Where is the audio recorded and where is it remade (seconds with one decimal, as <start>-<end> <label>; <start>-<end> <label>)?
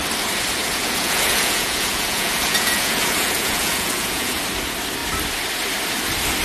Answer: 0.0-0.6 recorded; 0.6-4.4 remade; 4.4-6.4 recorded